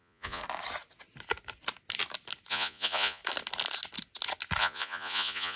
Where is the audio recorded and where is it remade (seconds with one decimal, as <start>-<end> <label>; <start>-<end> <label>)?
0.0-0.4 remade; 0.4-2.5 recorded; 2.5-3.2 remade; 3.2-4.6 recorded; 4.6-5.6 remade